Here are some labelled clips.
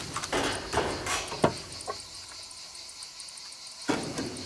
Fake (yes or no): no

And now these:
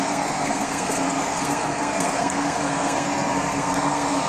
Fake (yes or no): yes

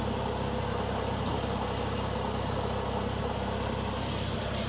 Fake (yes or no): no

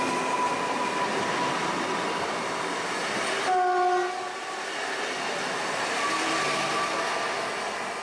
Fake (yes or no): no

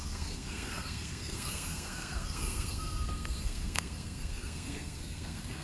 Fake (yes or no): yes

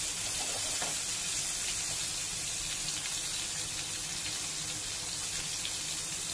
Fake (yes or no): no